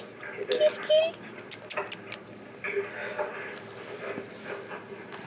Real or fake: real